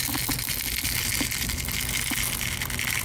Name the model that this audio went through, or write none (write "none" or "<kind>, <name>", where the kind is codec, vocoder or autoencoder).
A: none